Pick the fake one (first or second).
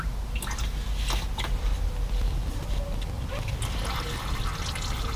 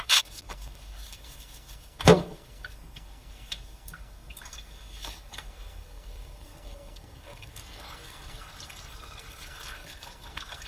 second